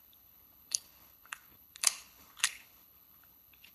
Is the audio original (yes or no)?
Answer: no